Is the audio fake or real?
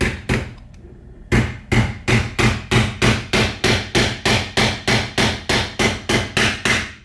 real